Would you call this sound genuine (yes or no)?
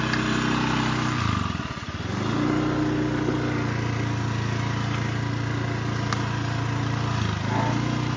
yes